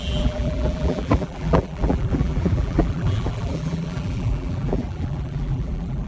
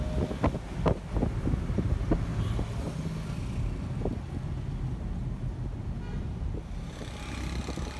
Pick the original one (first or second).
second